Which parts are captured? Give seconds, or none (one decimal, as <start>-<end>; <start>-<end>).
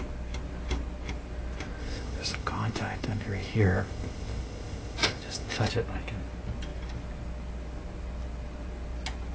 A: 0.0-1.8; 5.7-9.3